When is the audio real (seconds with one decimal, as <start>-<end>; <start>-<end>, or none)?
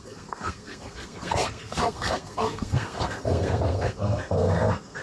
none